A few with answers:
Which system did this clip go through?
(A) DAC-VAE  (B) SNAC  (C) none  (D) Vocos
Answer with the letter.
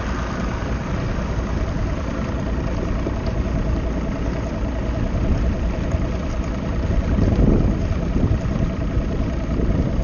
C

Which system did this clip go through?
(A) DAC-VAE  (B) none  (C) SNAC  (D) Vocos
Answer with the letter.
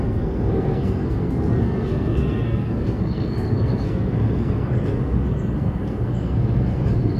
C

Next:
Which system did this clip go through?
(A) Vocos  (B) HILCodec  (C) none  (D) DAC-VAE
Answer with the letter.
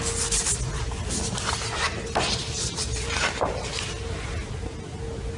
C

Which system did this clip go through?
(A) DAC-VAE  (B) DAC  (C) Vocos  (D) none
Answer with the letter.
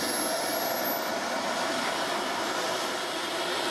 D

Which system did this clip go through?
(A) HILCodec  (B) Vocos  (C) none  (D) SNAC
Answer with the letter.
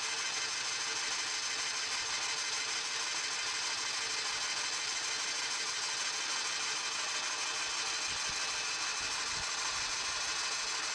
C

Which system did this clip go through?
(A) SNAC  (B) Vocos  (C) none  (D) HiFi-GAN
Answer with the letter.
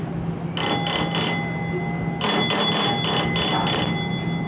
C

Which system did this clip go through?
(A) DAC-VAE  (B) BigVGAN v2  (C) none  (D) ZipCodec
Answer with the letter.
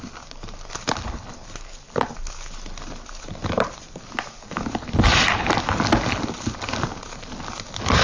C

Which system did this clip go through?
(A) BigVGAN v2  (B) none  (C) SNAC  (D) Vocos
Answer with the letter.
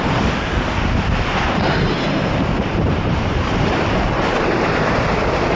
A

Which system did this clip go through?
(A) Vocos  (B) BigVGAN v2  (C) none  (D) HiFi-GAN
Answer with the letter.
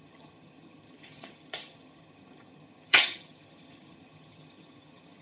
D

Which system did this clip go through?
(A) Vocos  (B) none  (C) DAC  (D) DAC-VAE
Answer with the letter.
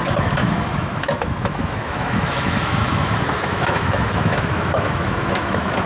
D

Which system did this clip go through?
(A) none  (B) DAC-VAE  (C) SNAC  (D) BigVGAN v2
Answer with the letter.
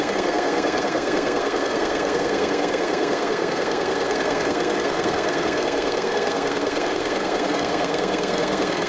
C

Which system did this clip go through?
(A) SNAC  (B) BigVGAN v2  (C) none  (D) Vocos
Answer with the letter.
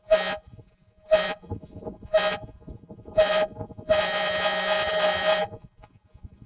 D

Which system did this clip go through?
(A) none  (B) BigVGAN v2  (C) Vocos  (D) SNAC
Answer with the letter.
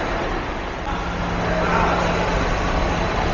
A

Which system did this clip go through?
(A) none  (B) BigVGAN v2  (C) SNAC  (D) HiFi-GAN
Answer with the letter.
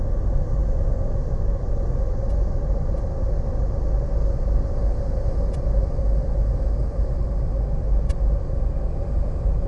A